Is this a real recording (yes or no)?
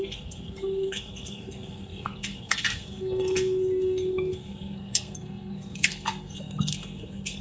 no